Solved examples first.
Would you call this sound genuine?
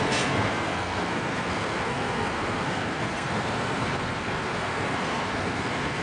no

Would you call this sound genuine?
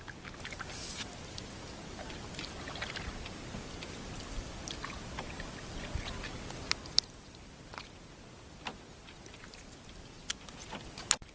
yes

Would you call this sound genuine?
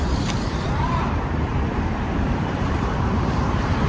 no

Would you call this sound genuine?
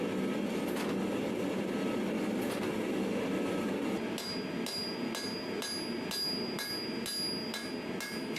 yes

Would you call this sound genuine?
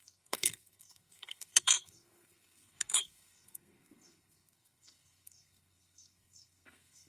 no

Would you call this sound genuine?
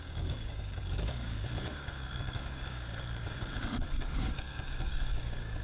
no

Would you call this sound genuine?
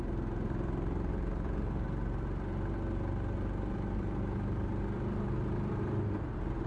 yes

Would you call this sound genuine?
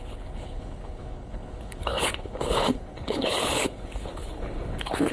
no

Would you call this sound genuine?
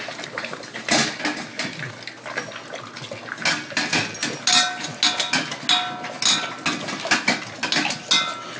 yes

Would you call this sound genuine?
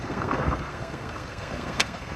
no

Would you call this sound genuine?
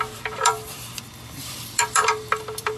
no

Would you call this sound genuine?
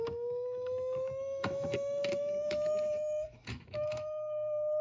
no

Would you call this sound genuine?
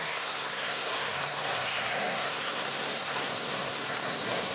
no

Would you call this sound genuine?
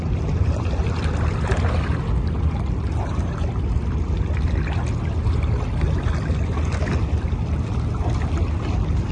yes